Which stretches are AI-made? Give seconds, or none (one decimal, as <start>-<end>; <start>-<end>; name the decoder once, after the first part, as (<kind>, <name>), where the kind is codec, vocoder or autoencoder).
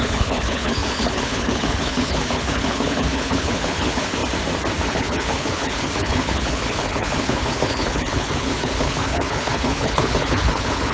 0.0-4.2 (codec, HILCodec); 4.9-10.9